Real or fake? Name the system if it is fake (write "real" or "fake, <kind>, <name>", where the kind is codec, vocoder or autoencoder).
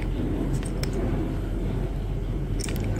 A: real